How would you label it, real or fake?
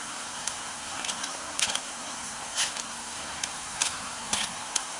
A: fake